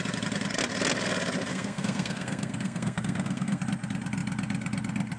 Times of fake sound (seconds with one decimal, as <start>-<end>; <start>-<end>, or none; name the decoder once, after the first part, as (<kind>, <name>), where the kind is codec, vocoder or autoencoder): 1.5-3.6 (codec, SNAC)